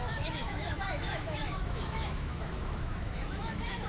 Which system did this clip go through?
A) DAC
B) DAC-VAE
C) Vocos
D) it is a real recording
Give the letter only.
B